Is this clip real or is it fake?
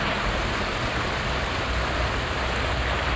real